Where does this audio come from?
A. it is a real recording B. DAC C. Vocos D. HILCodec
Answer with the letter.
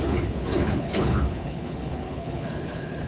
D